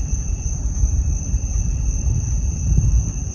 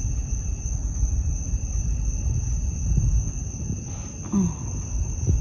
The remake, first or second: first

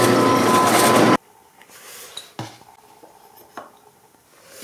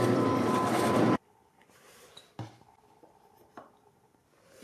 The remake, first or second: second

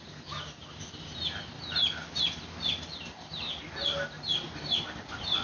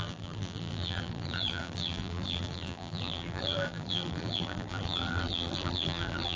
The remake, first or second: second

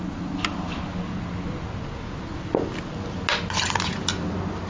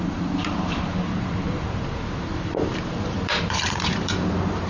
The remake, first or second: second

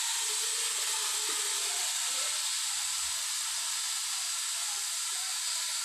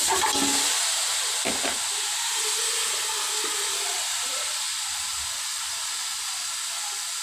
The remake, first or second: second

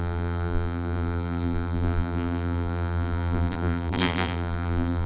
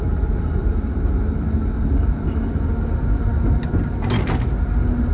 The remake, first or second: first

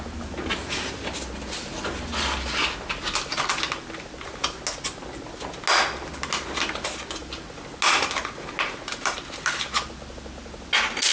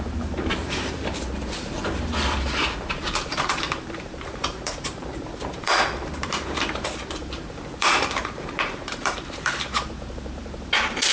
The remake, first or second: second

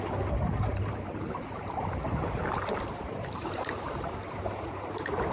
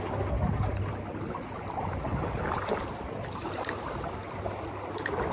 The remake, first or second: first